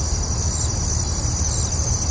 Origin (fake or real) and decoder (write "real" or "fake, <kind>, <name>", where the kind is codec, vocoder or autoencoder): real